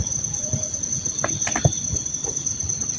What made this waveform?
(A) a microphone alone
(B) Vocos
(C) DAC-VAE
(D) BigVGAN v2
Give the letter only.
A